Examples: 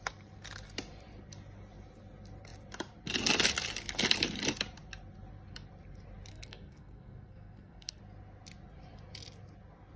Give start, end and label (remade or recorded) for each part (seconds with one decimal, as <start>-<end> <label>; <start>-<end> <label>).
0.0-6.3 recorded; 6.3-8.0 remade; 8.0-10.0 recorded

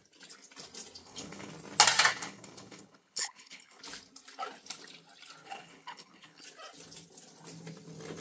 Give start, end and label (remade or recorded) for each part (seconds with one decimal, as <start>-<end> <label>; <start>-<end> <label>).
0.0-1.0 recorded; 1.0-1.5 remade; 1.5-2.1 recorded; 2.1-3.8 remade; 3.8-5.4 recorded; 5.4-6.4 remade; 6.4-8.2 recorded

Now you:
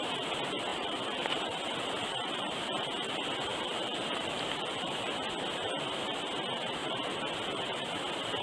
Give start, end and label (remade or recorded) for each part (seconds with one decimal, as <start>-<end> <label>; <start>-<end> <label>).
0.0-0.7 recorded; 0.7-1.7 remade; 1.7-3.5 recorded; 3.5-5.3 remade; 5.3-6.8 recorded; 6.8-7.3 remade; 7.3-8.4 recorded

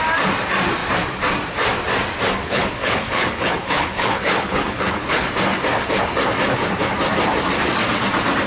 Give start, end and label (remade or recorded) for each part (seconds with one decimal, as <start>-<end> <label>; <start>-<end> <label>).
0.0-2.4 recorded; 2.4-5.3 remade; 5.3-8.5 recorded

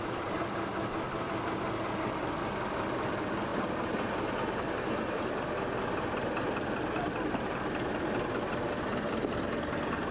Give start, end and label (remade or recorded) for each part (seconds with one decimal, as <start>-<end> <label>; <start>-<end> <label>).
0.0-2.2 remade; 2.2-2.7 recorded; 2.7-3.5 remade; 3.5-8.4 recorded; 8.4-10.1 remade

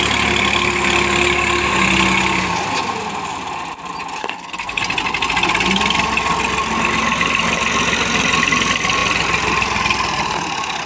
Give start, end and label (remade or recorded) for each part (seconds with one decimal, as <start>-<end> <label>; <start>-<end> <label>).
0.0-4.2 recorded; 4.2-4.8 remade; 4.8-10.9 recorded